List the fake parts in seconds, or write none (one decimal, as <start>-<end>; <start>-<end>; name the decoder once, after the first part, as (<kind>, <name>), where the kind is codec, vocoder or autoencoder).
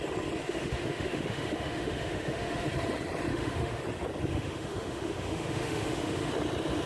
0.4-2.7 (autoencoder, DAC-VAE); 3.3-3.8; 4.3-6.3